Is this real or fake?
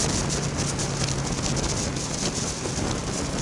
real